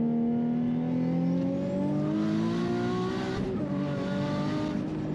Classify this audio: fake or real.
real